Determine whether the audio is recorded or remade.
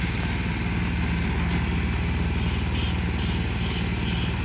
recorded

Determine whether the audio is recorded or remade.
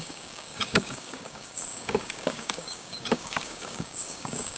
remade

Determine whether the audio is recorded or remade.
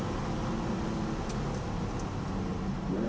recorded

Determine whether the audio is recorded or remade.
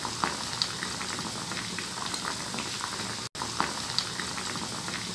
recorded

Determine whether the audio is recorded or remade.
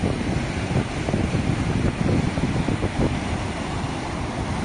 recorded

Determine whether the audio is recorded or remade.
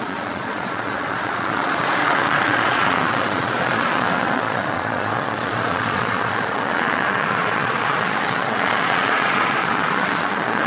remade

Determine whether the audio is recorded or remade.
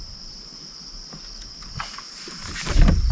recorded